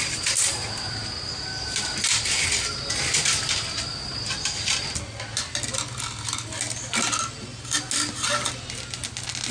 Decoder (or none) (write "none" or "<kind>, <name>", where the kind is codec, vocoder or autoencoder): none